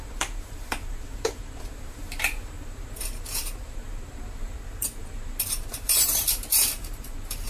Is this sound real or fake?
fake